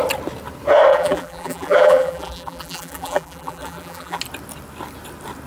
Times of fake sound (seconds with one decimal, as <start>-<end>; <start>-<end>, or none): 0.9-4.2